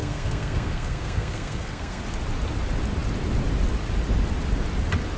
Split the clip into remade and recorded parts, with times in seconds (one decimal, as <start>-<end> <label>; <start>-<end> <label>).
0.0-2.0 remade; 2.0-5.2 recorded